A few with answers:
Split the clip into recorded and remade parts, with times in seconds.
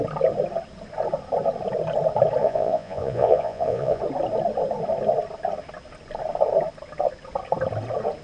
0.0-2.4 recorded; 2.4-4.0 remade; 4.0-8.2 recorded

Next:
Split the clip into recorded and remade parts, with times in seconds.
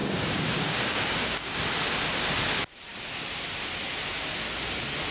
0.0-1.6 remade; 1.6-5.1 recorded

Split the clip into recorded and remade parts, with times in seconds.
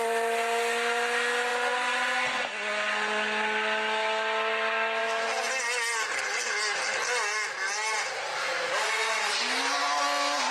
0.0-10.5 recorded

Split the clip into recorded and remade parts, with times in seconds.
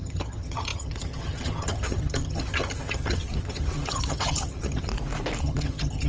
0.0-4.9 remade; 4.9-5.4 recorded; 5.4-6.1 remade